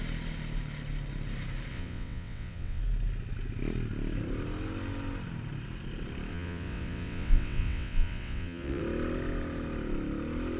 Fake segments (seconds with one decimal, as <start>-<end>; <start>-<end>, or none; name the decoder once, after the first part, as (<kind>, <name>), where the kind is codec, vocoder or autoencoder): 1.7-2.8 (vocoder, WaveNeXt); 6.3-8.8